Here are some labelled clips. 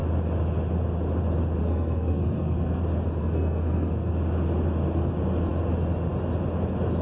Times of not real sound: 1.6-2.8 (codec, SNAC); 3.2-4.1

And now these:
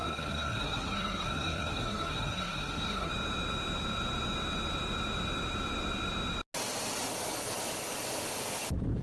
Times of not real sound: 0.0-3.1 (codec, SNAC)

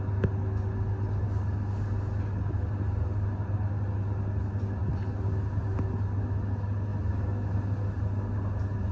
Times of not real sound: none

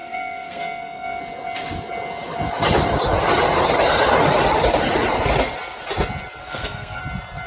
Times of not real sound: 0.0-1.2 (codec, SNAC); 6.4-7.0

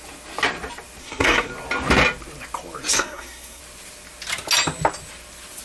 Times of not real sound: 1.0-1.5 (codec, SNAC); 2.9-3.6